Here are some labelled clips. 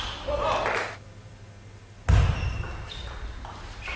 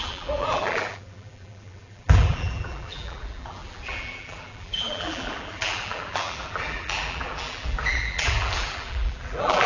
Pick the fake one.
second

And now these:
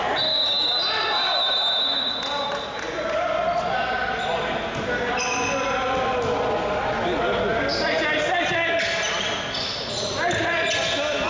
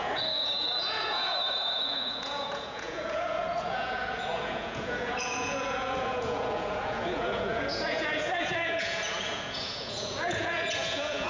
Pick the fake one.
second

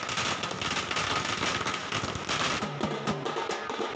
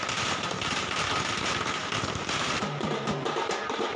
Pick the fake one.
second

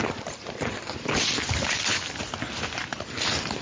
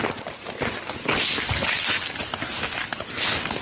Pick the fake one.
first